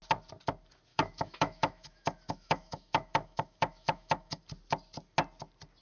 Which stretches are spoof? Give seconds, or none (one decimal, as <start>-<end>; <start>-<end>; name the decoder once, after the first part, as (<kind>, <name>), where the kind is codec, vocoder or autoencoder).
0.9-4.4 (autoencoder, DAC-VAE)